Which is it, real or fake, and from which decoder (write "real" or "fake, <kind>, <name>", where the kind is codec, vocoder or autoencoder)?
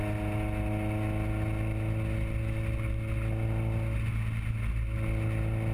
real